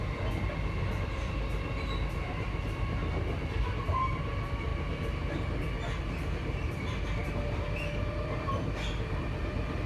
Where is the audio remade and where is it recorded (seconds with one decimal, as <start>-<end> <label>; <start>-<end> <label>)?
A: 0.0-9.9 recorded